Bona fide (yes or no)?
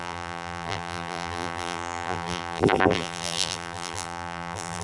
no